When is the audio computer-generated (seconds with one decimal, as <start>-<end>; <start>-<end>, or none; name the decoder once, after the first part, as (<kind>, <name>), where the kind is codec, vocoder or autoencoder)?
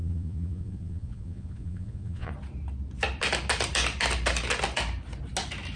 0.0-2.3 (vocoder, Vocos)